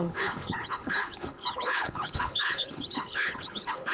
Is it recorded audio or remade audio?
remade